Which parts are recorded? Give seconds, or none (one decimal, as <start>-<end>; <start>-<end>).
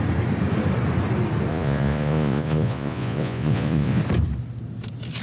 0.0-1.5; 4.0-5.2